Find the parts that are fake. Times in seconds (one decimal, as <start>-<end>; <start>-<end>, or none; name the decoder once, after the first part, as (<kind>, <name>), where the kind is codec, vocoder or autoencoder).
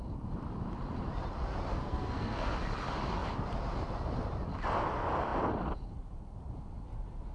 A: 1.7-2.5 (codec, SNAC)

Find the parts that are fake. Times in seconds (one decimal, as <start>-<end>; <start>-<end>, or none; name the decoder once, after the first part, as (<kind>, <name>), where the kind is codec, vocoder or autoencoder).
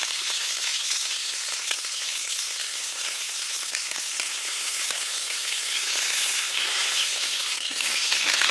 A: 0.0-8.5 (codec, SNAC)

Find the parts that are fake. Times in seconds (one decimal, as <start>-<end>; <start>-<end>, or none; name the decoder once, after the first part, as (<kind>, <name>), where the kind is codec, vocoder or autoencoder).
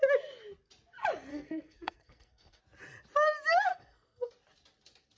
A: 1.3-2.6 (codec, SNAC); 3.7-4.3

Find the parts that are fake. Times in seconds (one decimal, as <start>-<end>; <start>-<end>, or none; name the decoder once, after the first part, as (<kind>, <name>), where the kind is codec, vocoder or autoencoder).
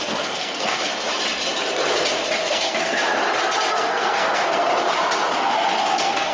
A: 0.0-0.9 (codec, SNAC); 2.4-3.0; 3.7-4.7; 5.8-6.3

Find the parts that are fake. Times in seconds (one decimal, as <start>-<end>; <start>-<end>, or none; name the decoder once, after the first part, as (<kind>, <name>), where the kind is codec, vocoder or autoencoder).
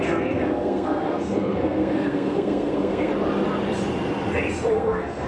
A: 0.0-3.1 (codec, SNAC); 4.7-5.3